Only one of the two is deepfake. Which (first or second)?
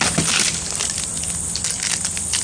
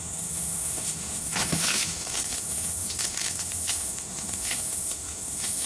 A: second